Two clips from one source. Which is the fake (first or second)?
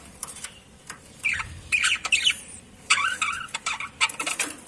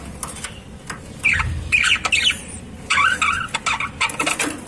first